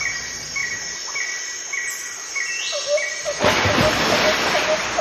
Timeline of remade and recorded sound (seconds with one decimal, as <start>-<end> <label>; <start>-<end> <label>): 0.0-5.0 recorded